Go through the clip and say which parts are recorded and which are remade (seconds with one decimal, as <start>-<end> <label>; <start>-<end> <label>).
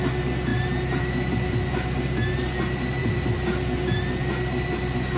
0.0-3.0 recorded; 3.0-3.8 remade; 3.8-5.2 recorded